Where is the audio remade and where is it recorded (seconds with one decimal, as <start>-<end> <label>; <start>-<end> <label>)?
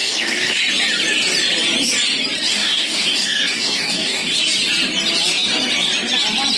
0.0-0.6 remade; 0.6-2.5 recorded; 2.5-4.4 remade; 4.4-6.6 recorded